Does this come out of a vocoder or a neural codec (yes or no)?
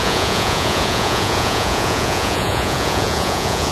yes